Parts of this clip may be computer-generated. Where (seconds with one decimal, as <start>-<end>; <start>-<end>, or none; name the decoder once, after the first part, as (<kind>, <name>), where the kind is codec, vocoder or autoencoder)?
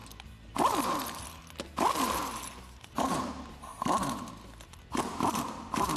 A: 3.0-3.7 (vocoder, BigVGAN v2); 5.0-6.0